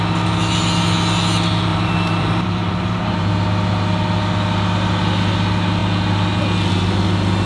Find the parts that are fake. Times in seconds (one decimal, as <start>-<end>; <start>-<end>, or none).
1.7-3.3

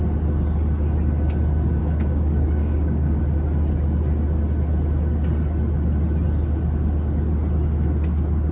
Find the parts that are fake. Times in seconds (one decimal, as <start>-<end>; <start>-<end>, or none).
1.8-3.2

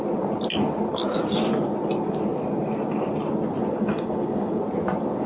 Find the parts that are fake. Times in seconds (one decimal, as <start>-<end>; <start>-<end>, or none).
3.8-4.6

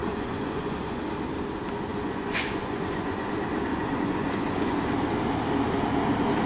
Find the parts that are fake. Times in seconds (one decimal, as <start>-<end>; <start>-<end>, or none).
0.0-1.0; 1.9-3.3; 3.7-4.8

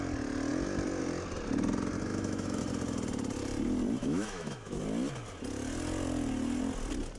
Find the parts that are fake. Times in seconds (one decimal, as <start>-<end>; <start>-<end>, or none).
2.1-2.6; 4.0-4.8